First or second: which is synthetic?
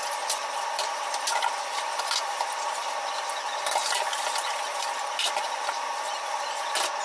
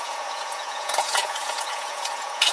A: second